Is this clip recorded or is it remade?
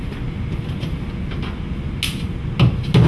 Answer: recorded